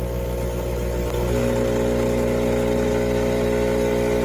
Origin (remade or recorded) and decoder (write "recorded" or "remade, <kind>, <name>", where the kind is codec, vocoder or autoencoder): recorded